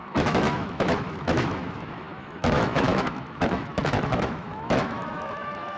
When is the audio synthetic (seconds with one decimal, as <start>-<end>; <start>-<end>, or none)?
0.0-5.8